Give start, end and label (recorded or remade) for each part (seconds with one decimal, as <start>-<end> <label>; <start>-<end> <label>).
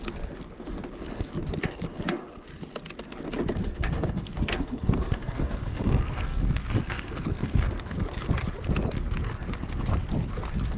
0.0-3.6 recorded; 3.6-8.0 remade; 8.0-10.8 recorded